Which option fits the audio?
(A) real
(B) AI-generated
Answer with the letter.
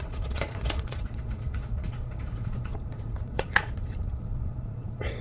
B